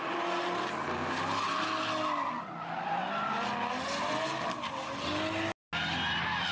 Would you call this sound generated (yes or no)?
no